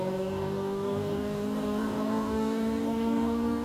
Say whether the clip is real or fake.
fake